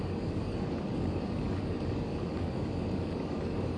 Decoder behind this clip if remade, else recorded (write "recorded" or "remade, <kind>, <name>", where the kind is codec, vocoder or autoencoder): remade, codec, DAC